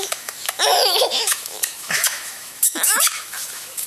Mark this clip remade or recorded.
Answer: remade